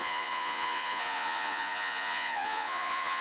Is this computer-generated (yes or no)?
yes